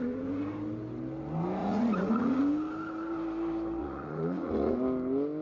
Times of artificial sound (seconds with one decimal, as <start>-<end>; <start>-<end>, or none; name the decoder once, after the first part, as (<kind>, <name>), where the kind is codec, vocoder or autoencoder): 1.6-2.4 (vocoder, Vocos); 3.8-4.7